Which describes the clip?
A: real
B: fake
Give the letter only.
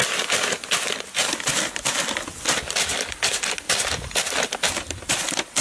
A